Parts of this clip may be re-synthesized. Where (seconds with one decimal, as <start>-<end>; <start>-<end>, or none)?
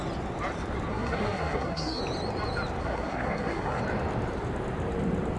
0.9-2.0; 2.8-3.8